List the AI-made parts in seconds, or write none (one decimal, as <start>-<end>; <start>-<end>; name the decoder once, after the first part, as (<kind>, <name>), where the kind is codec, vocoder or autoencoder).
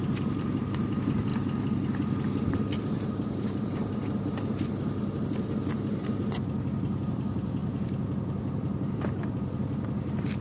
0.0-1.3 (vocoder, BigVGAN v2); 2.8-10.4